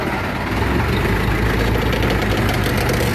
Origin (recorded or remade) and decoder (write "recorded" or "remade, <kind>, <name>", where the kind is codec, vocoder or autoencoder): recorded